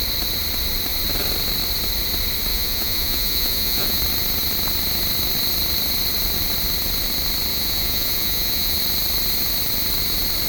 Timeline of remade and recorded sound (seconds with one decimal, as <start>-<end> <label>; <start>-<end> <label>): 0.0-2.5 recorded; 2.5-4.0 remade; 4.0-7.5 recorded; 7.5-8.8 remade; 8.8-10.5 recorded